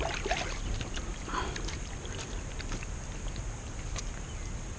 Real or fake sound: real